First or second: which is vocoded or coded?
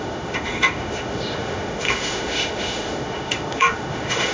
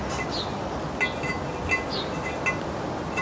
first